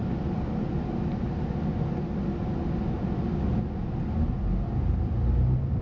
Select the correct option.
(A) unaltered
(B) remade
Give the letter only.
A